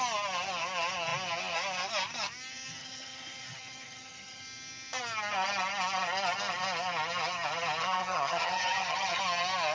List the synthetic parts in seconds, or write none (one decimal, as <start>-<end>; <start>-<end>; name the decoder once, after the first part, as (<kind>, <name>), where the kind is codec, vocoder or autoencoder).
2.8-4.4 (vocoder, HiFi-GAN); 8.0-9.2